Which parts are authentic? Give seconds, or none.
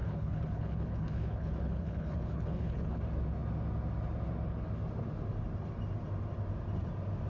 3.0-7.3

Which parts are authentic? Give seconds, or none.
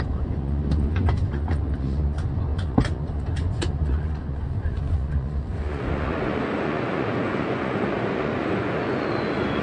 none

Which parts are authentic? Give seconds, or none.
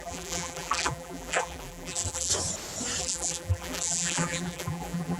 2.3-3.0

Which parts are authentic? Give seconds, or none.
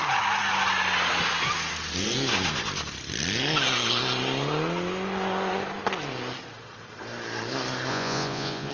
0.0-7.9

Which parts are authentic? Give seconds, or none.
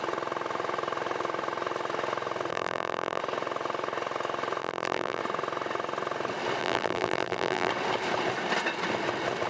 0.0-2.5; 3.2-4.6; 5.2-6.6; 7.7-9.5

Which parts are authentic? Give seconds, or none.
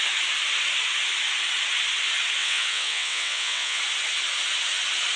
0.0-2.4; 3.8-5.2